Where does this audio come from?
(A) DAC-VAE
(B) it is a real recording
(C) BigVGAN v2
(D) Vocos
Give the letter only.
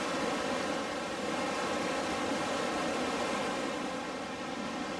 B